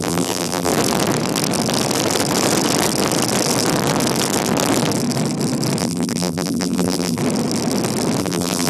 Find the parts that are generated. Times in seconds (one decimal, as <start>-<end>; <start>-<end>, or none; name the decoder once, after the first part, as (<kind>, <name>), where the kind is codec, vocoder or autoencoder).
0.0-0.7 (vocoder, BigVGAN v2); 5.8-7.2; 8.2-8.7

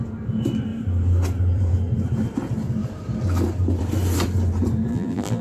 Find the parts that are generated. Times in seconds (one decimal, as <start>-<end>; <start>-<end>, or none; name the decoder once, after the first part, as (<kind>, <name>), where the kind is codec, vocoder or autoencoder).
4.9-5.4 (vocoder, BigVGAN v2)

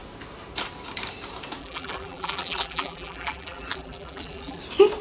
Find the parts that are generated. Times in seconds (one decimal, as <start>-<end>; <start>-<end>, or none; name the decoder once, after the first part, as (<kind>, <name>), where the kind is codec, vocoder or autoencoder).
1.6-4.6 (vocoder, BigVGAN v2)

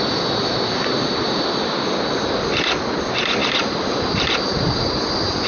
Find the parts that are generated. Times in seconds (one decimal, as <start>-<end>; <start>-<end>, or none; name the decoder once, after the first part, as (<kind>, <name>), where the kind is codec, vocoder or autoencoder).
3.4-4.8 (vocoder, BigVGAN v2)

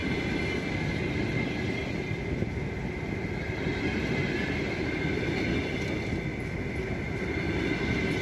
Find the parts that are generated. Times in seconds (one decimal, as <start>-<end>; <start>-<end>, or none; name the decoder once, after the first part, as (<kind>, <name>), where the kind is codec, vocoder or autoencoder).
none

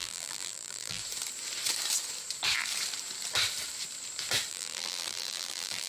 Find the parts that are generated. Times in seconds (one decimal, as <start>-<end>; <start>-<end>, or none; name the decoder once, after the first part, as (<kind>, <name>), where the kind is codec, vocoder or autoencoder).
0.0-1.0 (vocoder, BigVGAN v2); 4.5-5.9

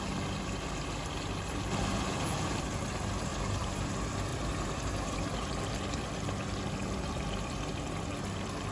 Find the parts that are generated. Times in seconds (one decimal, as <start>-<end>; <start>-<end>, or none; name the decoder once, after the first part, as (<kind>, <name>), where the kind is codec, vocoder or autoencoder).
1.9-2.5 (vocoder, BigVGAN v2); 3.3-3.9; 4.3-5.6